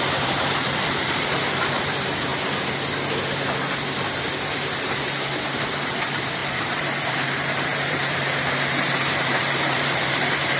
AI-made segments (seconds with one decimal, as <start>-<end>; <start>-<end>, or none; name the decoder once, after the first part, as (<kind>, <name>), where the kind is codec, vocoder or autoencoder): 0.0-2.3 (vocoder, BigVGAN v2); 3.6-10.6